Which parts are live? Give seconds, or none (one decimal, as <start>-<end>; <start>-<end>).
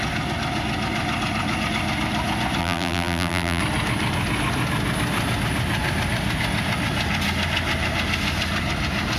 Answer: 0.0-2.6; 3.6-9.2